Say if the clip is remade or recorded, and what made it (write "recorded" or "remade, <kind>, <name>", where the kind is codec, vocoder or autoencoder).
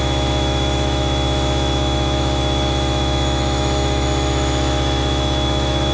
remade, autoencoder, DAC-VAE